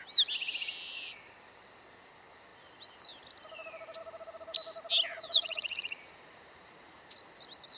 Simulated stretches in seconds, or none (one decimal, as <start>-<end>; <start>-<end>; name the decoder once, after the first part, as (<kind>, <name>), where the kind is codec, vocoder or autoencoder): 5.1-7.0 (vocoder, Vocos)